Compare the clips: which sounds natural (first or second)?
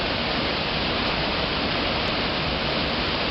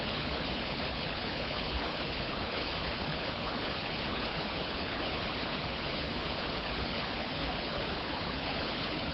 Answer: first